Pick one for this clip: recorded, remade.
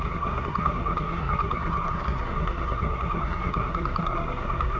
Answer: remade